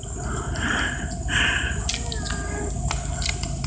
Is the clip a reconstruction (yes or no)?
no